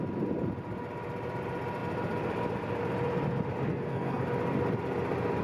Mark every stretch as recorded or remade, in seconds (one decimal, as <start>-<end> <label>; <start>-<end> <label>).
0.0-3.7 recorded; 3.7-4.2 remade; 4.2-5.4 recorded